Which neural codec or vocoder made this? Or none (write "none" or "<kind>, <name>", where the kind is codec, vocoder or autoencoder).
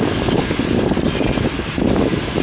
none